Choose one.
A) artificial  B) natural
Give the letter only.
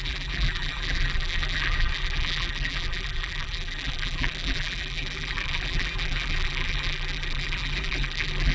A